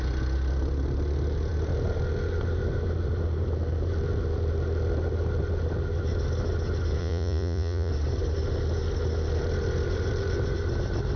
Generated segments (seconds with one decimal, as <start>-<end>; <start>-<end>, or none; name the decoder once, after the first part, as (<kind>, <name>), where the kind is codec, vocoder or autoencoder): 7.0-7.9 (vocoder, Vocos)